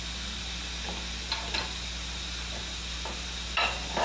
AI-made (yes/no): no